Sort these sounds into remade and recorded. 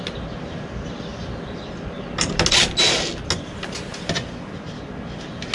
recorded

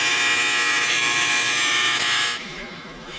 remade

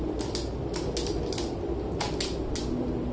recorded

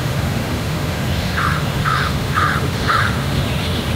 remade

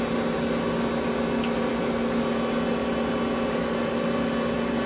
recorded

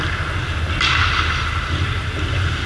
recorded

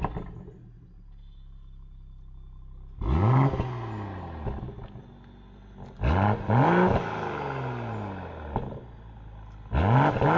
recorded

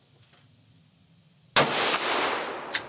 recorded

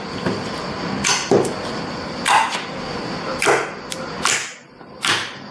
recorded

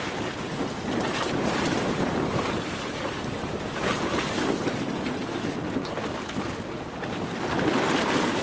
recorded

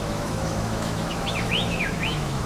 remade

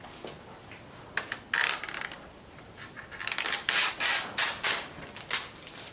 recorded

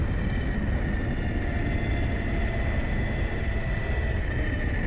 recorded